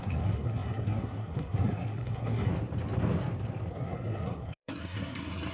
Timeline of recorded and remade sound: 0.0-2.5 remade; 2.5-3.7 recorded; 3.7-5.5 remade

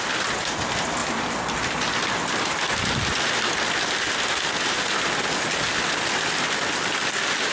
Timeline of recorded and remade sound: 0.0-7.5 recorded

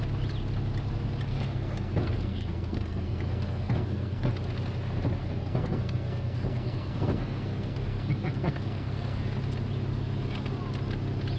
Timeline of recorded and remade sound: 0.0-1.3 recorded; 1.3-4.3 remade; 4.3-5.2 recorded; 5.2-9.2 remade; 9.2-11.4 recorded

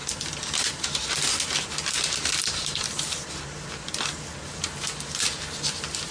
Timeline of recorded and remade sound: 0.0-6.1 recorded

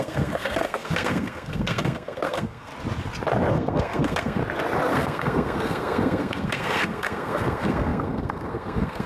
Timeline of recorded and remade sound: 0.0-2.7 remade; 2.7-3.5 recorded; 3.5-4.4 remade; 4.4-4.9 recorded; 4.9-9.1 remade

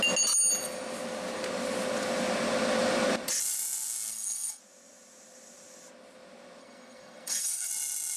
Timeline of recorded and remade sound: 0.0-4.1 recorded; 4.1-4.6 remade; 4.6-6.6 recorded; 6.6-7.7 remade; 7.7-8.2 recorded